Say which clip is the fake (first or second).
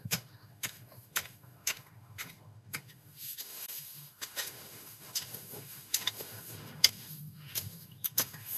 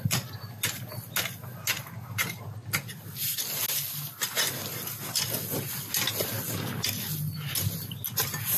first